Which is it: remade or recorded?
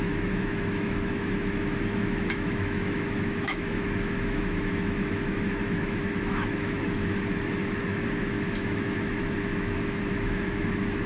remade